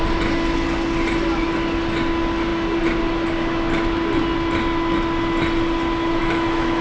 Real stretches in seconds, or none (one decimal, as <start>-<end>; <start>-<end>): 0.0-6.2